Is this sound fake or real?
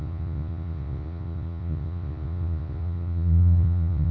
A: fake